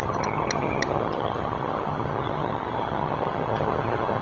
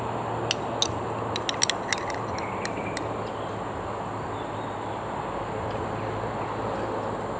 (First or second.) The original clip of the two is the second